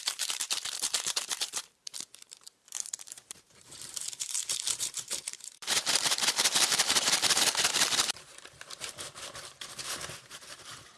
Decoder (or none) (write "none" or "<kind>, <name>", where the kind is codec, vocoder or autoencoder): vocoder, BigVGAN v2